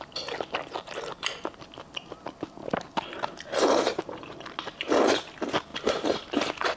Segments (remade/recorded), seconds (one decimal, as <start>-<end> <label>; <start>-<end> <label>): 0.0-5.7 recorded; 5.7-6.8 remade